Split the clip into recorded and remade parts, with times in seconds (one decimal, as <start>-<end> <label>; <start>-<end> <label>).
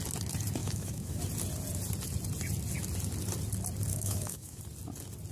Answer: 0.0-0.6 recorded; 0.6-1.2 remade; 1.2-3.9 recorded; 3.9-4.6 remade; 4.6-5.3 recorded